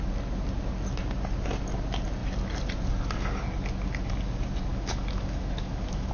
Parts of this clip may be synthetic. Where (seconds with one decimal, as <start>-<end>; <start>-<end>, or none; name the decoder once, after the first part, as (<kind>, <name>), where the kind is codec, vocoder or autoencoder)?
4.7-6.1 (autoencoder, DAC-VAE)